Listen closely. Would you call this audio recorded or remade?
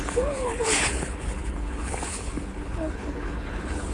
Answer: remade